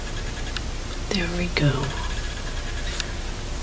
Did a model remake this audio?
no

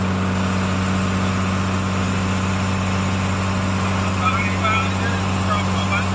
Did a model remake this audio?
no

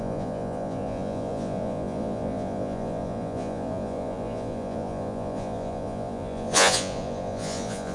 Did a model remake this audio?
yes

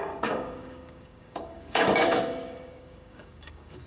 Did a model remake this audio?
yes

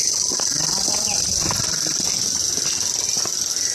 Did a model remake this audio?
no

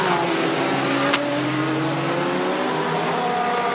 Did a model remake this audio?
no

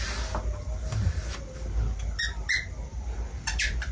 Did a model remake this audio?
no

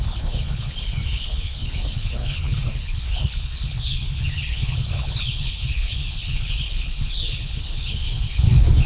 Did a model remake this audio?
yes